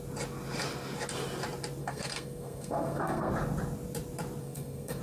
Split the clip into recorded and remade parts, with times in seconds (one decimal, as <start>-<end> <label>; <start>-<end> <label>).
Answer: 0.0-1.8 recorded; 1.8-3.3 remade; 3.3-4.4 recorded; 4.4-5.0 remade